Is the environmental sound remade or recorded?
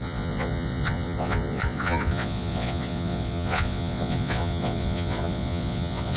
remade